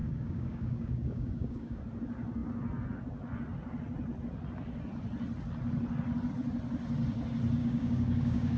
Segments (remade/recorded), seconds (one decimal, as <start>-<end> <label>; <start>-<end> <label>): 0.0-1.8 remade; 1.8-7.6 recorded; 7.6-8.6 remade